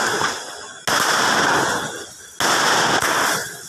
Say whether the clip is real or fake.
real